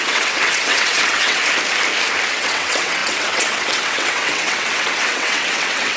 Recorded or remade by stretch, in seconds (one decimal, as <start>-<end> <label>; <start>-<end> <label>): 0.0-1.4 remade; 1.4-2.3 recorded; 2.3-6.0 remade